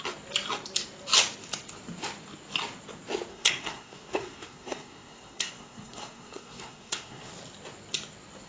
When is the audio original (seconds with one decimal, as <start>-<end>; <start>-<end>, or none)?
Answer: 0.0-3.3; 7.3-8.5